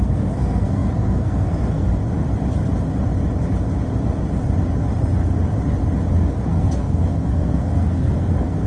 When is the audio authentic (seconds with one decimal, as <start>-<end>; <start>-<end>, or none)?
1.9-6.4